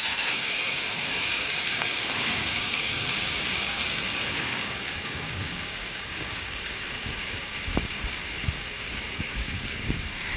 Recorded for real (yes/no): no